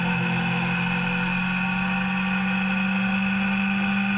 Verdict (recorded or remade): recorded